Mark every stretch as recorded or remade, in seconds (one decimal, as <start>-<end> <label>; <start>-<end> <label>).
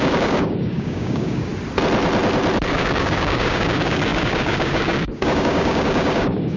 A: 0.0-1.5 remade; 1.5-2.7 recorded; 2.7-6.6 remade